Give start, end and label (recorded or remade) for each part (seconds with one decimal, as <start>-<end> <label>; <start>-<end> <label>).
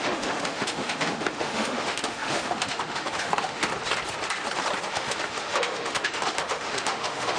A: 0.0-3.7 remade; 3.7-4.9 recorded; 4.9-7.4 remade